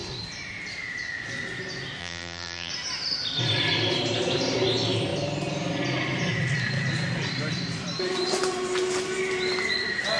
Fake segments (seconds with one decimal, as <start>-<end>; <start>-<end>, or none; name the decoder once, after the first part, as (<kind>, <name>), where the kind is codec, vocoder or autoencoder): 2.0-2.7 (vocoder, BigVGAN v2)